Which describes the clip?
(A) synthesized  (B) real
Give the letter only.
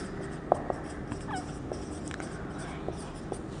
B